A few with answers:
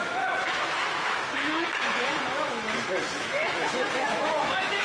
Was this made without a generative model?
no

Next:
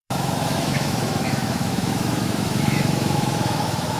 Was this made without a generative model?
no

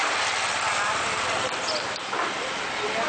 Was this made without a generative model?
yes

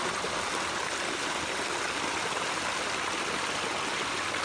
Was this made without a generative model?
yes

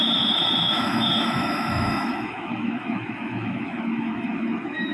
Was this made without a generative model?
no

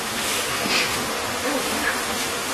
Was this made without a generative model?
no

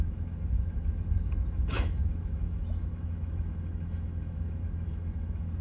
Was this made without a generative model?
no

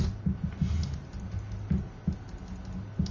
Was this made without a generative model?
yes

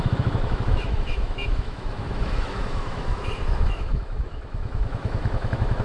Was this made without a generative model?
no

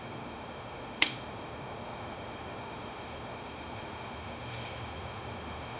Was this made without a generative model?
no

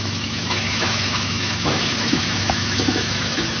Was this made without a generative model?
no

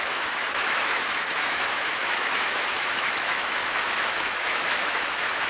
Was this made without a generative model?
no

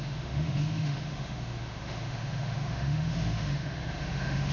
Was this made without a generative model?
no